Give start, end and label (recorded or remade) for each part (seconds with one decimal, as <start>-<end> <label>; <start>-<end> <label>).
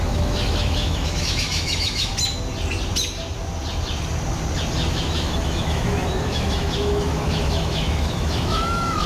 0.0-2.1 remade; 2.1-4.9 recorded; 4.9-9.1 remade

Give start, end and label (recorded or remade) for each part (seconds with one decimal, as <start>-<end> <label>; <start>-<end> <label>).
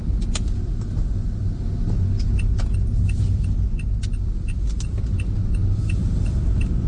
0.0-6.0 recorded; 6.0-6.9 remade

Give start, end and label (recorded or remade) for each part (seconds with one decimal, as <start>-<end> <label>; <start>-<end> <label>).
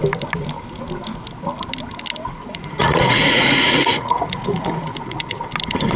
0.0-2.4 recorded; 2.4-5.4 remade; 5.4-6.0 recorded